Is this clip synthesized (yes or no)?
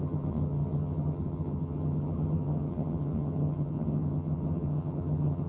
yes